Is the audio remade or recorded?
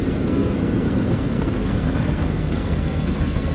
remade